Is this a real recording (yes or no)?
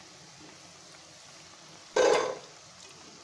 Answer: yes